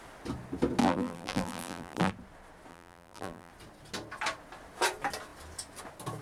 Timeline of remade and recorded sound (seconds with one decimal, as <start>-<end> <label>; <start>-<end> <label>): 0.0-0.8 recorded; 0.8-2.1 remade; 2.1-2.7 recorded; 2.7-3.5 remade; 3.5-6.2 recorded